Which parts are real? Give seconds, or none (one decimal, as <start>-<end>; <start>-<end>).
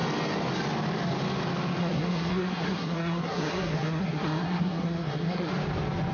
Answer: 0.0-1.8; 5.5-6.1